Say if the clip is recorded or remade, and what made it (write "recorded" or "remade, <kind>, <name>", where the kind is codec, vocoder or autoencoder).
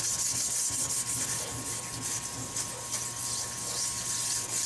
recorded